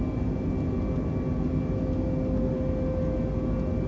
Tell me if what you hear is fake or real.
real